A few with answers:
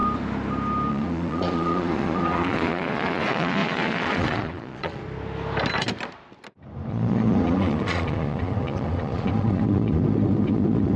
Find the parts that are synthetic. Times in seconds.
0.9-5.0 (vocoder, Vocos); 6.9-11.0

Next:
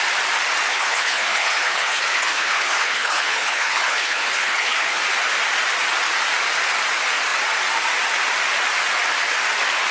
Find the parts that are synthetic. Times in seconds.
0.7-5.0 (codec, HILCodec)

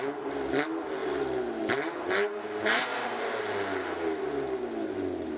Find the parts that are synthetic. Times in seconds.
none

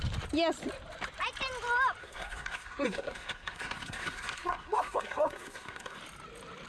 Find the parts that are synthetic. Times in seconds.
2.0-6.0 (codec, SNAC)

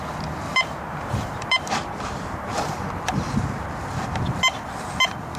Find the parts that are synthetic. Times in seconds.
0.5-3.7 (vocoder, BigVGAN v2)

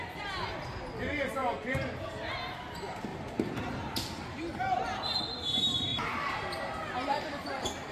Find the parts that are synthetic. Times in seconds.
none

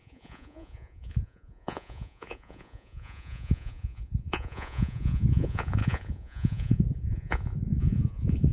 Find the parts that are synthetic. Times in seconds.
0.0-8.5 (vocoder, Vocos)

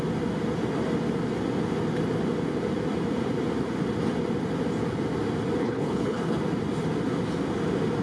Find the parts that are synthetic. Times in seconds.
5.6-6.4 (codec, HILCodec)